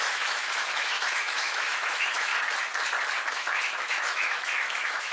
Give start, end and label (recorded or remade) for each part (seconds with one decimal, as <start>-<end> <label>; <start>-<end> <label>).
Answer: 0.0-2.3 remade; 2.3-3.3 recorded; 3.3-5.1 remade